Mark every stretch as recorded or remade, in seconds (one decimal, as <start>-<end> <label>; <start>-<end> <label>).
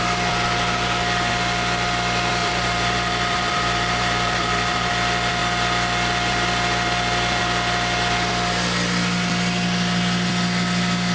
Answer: 0.0-2.4 recorded; 2.4-4.9 remade; 4.9-11.1 recorded